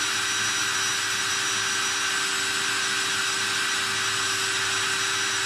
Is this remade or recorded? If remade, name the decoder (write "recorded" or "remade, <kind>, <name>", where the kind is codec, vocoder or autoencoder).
recorded